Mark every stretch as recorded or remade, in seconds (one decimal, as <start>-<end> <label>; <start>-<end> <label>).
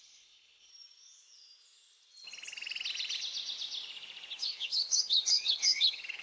0.0-0.7 remade; 0.7-4.4 recorded; 4.4-6.2 remade